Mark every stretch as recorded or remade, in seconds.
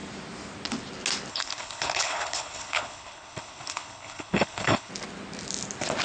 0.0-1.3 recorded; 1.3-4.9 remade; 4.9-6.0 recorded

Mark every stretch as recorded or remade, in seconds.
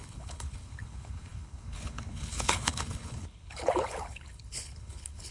0.0-5.3 remade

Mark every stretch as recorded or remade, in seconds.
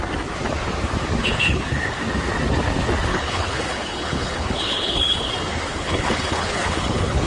0.0-1.2 recorded; 1.2-2.0 remade; 2.0-3.1 recorded; 3.1-5.3 remade; 5.3-5.7 recorded; 5.7-7.3 remade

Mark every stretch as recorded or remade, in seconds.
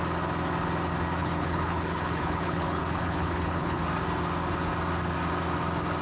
0.0-1.2 recorded; 1.2-3.8 remade; 3.8-6.0 recorded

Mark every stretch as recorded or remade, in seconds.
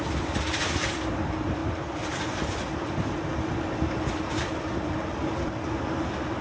0.0-6.4 recorded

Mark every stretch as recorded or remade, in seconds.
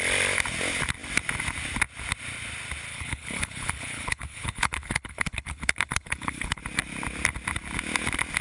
0.0-2.9 recorded; 2.9-6.6 remade; 6.6-8.4 recorded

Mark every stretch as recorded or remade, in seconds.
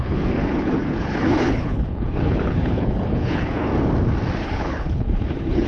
0.0-3.7 remade; 3.7-4.4 recorded; 4.4-5.7 remade